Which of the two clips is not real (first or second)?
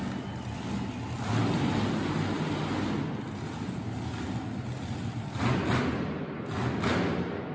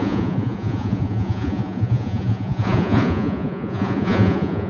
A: second